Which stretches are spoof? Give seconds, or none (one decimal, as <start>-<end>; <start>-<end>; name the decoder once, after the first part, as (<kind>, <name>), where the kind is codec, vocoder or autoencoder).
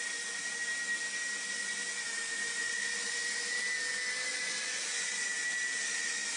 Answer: 4.3-5.2 (vocoder, Vocos)